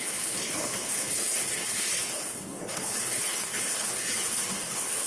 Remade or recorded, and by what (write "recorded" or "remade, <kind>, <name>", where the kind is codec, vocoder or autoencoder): remade, codec, HILCodec